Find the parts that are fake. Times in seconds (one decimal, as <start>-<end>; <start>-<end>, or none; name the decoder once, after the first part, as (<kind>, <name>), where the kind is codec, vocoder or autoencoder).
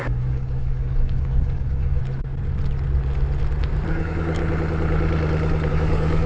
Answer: 0.0-2.0 (codec, DAC); 3.9-4.4; 5.7-6.3